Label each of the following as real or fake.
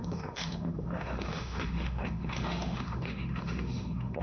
fake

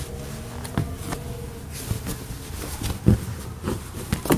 real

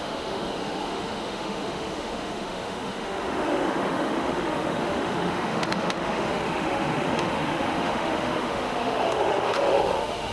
fake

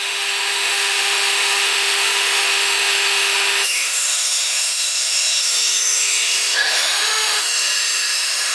fake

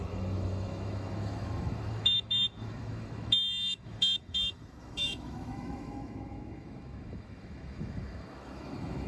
fake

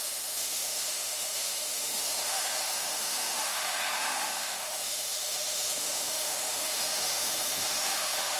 fake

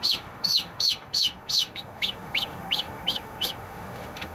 fake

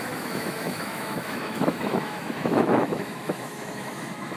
fake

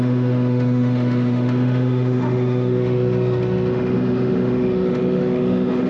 fake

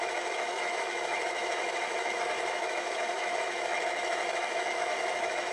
fake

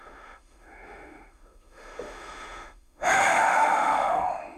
fake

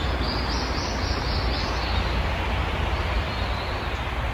real